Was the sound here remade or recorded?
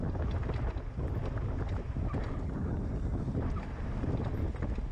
recorded